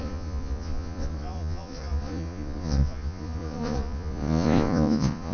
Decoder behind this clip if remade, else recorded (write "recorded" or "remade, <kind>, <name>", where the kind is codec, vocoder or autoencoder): remade, vocoder, Vocos